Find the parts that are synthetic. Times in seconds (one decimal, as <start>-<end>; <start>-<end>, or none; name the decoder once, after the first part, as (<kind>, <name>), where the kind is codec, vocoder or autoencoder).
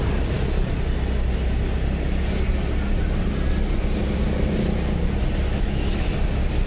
5.5-6.1 (autoencoder, DAC-VAE)